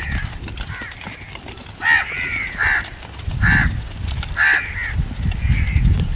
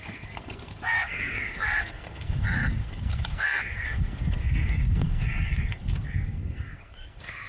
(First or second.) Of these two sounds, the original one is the first